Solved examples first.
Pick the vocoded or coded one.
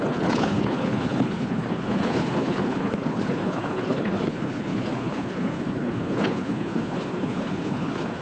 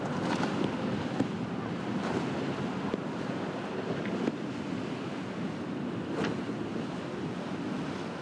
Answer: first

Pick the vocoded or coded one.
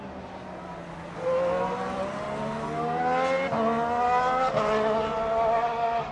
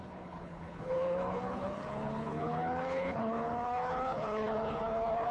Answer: second